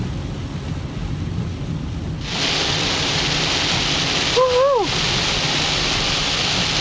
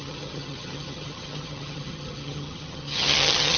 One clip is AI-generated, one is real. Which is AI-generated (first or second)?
second